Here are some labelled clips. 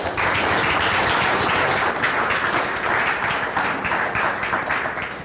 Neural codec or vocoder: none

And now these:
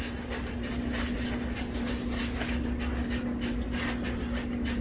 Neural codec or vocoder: none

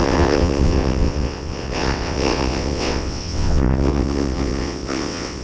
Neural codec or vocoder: vocoder, WaveNeXt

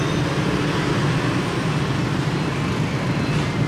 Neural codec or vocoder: none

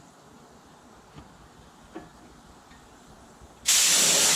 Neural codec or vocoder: none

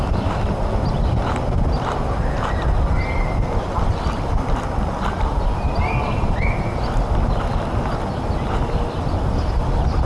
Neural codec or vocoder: none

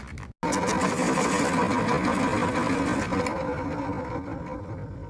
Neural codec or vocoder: none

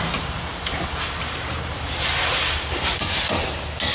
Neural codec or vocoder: vocoder, BigVGAN v2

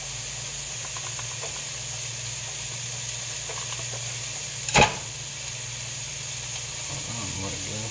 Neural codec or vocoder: none